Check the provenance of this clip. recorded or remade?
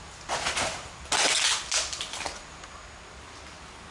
recorded